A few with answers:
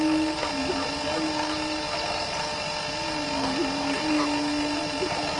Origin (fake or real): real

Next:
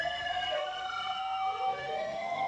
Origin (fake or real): fake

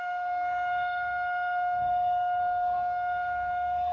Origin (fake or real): fake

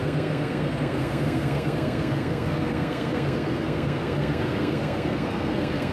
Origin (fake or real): fake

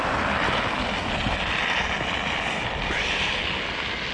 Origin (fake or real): real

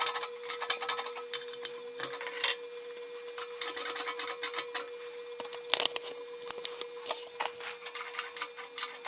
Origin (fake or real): real